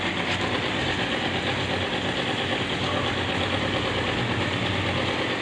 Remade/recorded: recorded